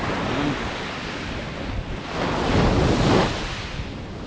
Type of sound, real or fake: real